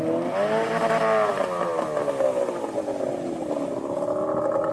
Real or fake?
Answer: real